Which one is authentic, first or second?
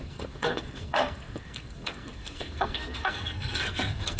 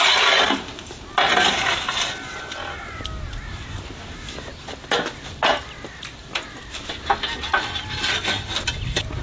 second